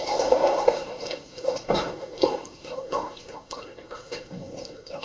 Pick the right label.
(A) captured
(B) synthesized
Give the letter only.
B